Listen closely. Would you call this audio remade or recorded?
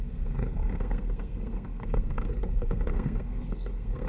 remade